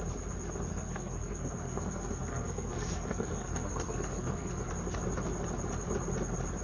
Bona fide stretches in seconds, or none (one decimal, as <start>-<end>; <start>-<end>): 0.0-0.7; 4.7-6.6